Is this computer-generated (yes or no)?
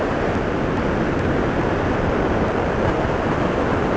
no